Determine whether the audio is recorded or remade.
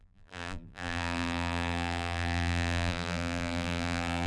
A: remade